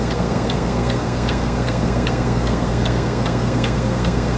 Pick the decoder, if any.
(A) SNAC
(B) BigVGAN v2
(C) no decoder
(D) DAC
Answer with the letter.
A